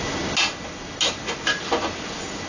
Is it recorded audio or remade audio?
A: recorded